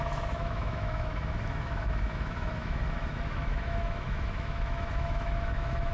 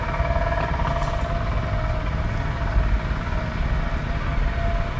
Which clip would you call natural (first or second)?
second